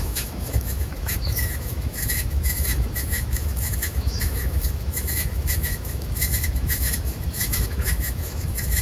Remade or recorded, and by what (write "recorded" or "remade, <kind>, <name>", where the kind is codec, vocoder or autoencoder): remade, autoencoder, DAC-VAE